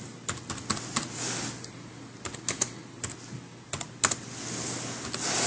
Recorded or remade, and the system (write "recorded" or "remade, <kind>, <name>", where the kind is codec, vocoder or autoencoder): recorded